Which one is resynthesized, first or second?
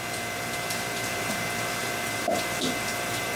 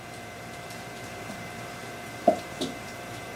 second